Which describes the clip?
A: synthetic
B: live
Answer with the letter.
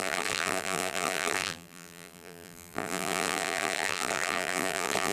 A